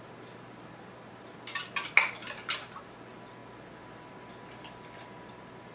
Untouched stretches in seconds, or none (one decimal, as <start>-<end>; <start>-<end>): 0.0-2.2; 2.8-5.7